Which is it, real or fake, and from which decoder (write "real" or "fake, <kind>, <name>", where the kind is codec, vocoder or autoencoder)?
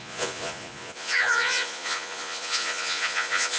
fake, vocoder, Vocos